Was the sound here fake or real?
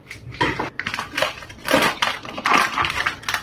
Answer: real